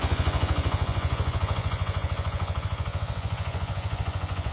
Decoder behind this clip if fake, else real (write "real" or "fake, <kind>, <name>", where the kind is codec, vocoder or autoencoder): fake, vocoder, Vocos